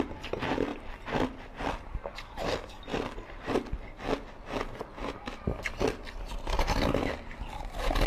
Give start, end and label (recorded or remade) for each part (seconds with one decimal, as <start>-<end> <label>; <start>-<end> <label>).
0.0-8.1 recorded